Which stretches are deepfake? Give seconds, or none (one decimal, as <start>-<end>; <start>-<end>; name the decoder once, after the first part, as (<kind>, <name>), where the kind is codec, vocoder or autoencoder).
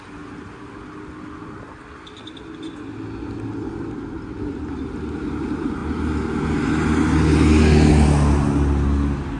none